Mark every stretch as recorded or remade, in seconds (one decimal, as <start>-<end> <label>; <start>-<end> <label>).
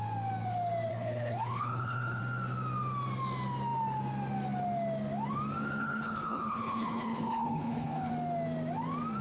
0.0-0.9 recorded; 0.9-2.2 remade; 2.2-5.8 recorded; 5.8-8.1 remade; 8.1-9.2 recorded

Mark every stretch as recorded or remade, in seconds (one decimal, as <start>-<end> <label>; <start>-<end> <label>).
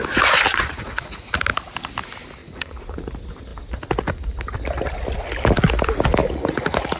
0.0-0.5 recorded; 0.5-1.3 remade; 1.3-2.4 recorded; 2.4-3.1 remade; 3.1-6.2 recorded; 6.2-7.0 remade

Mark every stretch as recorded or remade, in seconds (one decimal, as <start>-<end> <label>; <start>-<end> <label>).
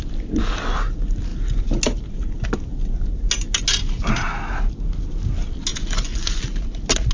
0.0-5.7 recorded; 5.7-6.4 remade; 6.4-7.1 recorded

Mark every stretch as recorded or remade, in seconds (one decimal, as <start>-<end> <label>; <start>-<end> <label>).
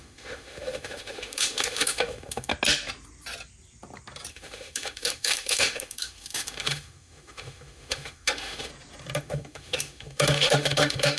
0.0-2.5 remade; 2.5-4.3 recorded; 4.3-8.7 remade; 8.7-9.2 recorded; 9.2-11.2 remade